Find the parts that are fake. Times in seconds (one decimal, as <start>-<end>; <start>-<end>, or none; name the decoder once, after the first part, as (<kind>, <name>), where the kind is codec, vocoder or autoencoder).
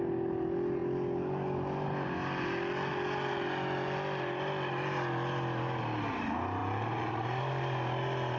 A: none